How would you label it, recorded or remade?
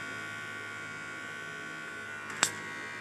recorded